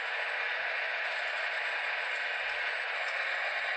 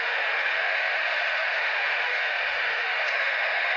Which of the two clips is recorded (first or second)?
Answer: first